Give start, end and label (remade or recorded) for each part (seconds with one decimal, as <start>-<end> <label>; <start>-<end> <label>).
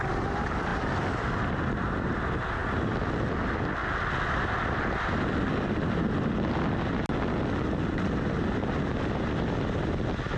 0.0-10.4 recorded